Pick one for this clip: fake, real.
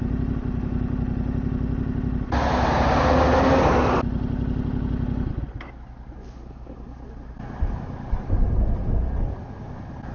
real